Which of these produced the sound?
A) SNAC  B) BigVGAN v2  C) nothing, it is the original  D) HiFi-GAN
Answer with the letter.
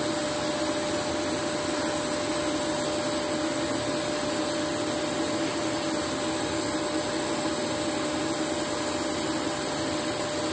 C